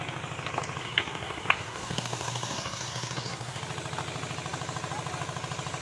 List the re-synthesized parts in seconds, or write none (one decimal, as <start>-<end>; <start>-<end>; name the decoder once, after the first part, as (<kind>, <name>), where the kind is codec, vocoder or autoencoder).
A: 0.8-3.6 (codec, SNAC)